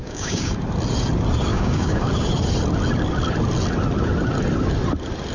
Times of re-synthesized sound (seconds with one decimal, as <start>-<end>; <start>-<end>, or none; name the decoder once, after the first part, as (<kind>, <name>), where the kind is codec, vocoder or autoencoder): 0.0-0.5 (codec, DAC); 1.5-2.1